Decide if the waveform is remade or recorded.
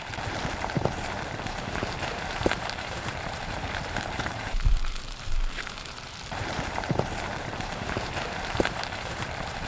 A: remade